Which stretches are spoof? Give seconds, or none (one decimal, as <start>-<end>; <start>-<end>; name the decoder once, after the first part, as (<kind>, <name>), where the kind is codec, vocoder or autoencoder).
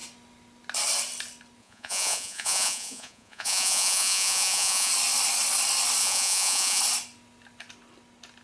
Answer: 1.6-4.9 (vocoder, Vocos); 6.0-6.8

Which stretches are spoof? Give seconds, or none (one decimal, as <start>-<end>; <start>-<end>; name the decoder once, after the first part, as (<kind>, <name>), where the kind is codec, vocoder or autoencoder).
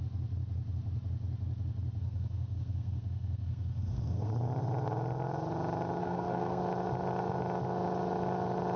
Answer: 2.0-4.3 (codec, SNAC); 6.0-6.6